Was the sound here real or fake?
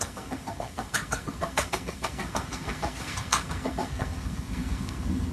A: fake